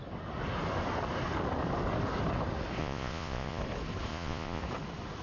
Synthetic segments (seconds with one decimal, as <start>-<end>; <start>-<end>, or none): 2.8-3.6; 4.1-4.6